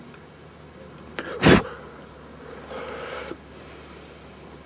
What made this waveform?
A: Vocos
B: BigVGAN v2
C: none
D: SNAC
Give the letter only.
C